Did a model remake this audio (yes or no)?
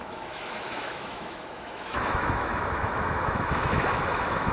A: yes